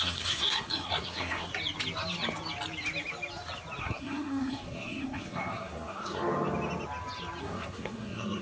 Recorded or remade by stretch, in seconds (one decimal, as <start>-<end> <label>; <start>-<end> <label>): 0.0-1.5 remade; 1.5-3.8 recorded; 3.8-6.2 remade; 6.2-7.4 recorded; 7.4-8.4 remade